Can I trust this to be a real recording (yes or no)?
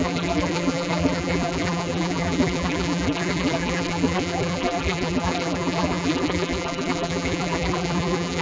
no